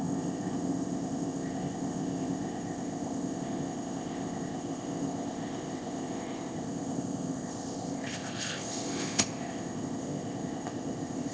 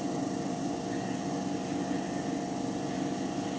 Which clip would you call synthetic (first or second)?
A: first